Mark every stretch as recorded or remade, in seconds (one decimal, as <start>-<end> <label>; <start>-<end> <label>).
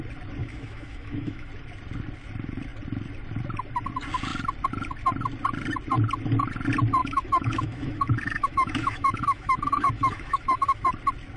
0.0-0.4 recorded; 0.4-1.5 remade; 1.5-7.0 recorded; 7.0-10.8 remade; 10.8-11.4 recorded